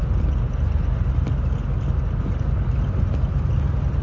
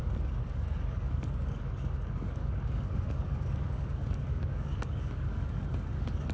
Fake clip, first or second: second